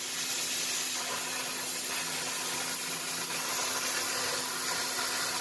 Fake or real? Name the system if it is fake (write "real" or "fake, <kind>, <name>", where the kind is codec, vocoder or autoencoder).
real